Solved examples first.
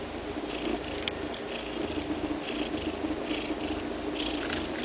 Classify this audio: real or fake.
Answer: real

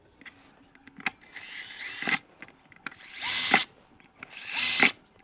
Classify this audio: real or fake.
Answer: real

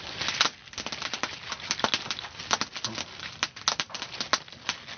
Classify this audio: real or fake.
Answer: real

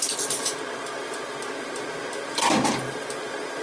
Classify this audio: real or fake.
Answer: real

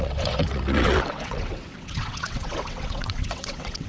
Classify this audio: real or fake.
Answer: fake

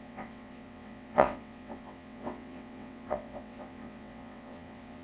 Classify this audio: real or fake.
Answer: fake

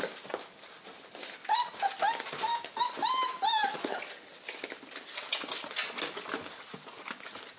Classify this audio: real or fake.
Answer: real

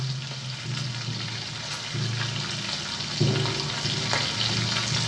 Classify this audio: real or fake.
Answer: real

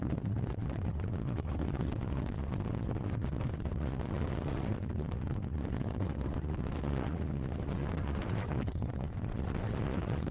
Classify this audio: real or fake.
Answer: fake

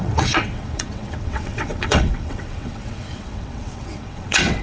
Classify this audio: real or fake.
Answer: fake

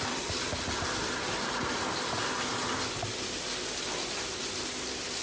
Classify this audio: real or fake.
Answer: real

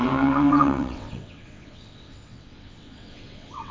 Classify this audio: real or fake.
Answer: fake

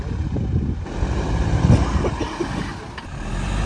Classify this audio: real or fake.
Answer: real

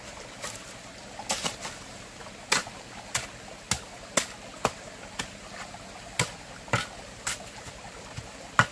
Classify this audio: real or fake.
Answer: real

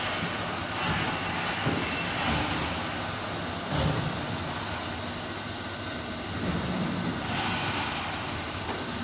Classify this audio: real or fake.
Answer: real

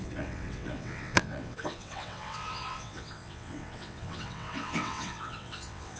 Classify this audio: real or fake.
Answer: fake